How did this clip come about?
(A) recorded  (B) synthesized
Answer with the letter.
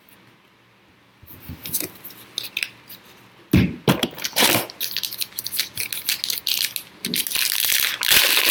A